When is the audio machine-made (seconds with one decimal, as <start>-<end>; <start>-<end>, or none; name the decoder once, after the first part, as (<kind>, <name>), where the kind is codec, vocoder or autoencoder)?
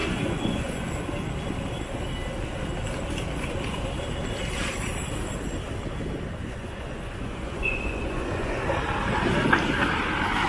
0.0-0.9 (vocoder, Vocos); 6.4-8.6